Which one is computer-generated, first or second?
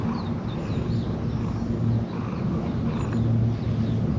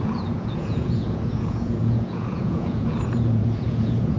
second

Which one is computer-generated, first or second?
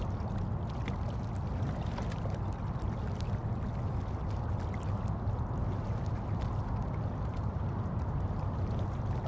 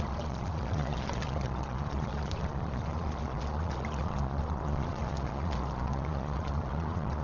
second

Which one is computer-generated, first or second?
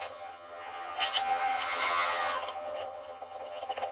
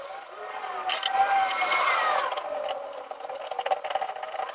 first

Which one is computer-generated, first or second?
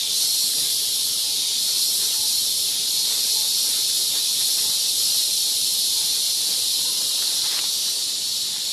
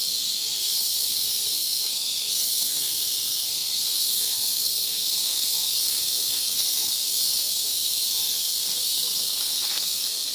second